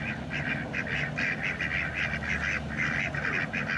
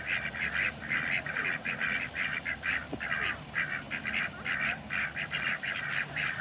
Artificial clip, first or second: second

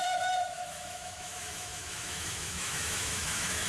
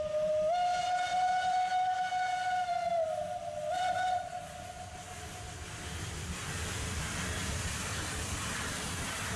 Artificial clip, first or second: first